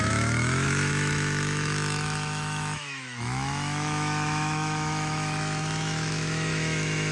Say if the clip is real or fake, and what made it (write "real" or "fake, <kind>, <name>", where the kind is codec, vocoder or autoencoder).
fake, autoencoder, DAC-VAE